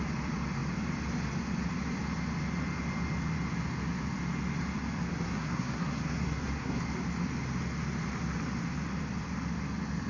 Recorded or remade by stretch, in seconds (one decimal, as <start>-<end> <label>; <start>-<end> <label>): 0.0-5.1 recorded; 5.1-6.8 remade; 6.8-10.1 recorded

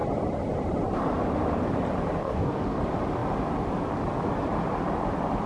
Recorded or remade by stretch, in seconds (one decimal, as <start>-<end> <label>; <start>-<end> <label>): 0.0-2.2 recorded; 2.2-2.8 remade; 2.8-5.5 recorded

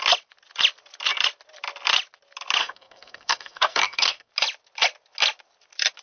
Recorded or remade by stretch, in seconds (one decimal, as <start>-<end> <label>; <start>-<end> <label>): 0.0-2.6 recorded; 2.6-4.3 remade; 4.3-6.0 recorded